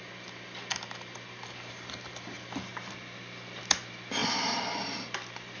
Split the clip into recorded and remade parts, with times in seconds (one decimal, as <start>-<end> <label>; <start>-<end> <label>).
0.0-4.2 recorded; 4.2-5.0 remade; 5.0-5.6 recorded